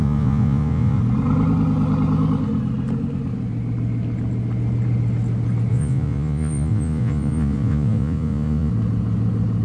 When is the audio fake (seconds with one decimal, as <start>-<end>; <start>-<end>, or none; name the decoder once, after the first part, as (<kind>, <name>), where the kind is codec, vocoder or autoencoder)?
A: 0.0-1.0 (vocoder, Vocos); 5.7-8.7